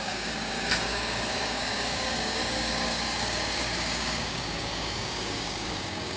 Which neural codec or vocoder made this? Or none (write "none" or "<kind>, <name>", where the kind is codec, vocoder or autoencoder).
codec, DAC